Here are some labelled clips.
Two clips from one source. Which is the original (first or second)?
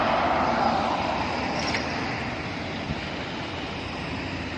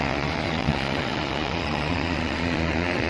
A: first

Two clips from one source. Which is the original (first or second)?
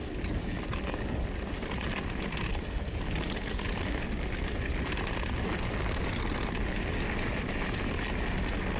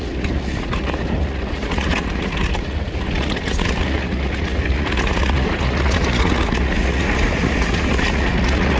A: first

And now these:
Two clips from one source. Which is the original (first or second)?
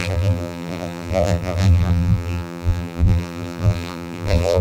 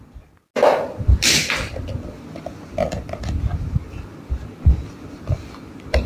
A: second